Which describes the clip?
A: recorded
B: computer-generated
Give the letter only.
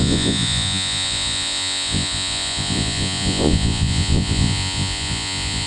B